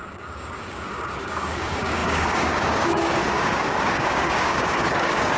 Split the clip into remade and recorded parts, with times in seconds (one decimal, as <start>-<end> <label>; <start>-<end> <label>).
0.0-5.4 remade